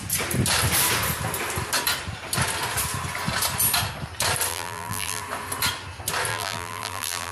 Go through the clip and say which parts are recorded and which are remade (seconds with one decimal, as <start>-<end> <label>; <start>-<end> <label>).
0.0-4.5 recorded; 4.5-5.2 remade; 5.2-6.3 recorded; 6.3-7.3 remade